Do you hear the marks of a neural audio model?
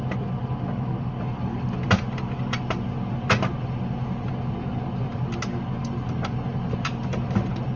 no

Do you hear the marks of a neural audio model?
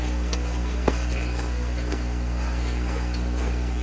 yes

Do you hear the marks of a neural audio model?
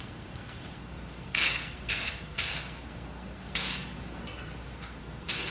yes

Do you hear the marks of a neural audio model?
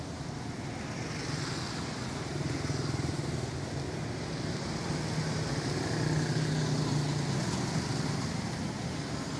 no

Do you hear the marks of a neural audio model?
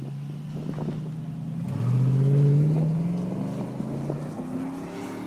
no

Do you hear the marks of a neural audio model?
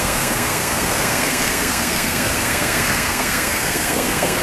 yes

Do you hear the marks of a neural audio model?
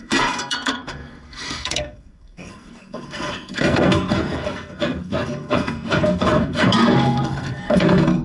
yes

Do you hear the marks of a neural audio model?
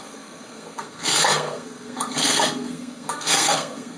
yes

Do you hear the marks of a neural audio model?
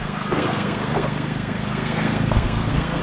yes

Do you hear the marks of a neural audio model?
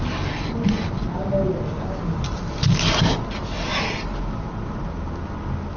no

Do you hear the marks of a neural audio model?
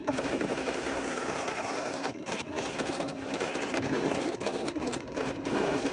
yes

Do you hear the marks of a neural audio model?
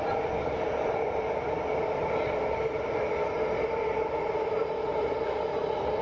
no